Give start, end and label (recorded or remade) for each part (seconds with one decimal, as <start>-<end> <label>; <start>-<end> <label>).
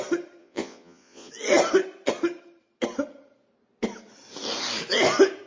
0.0-0.4 recorded; 0.4-1.3 remade; 1.3-5.5 recorded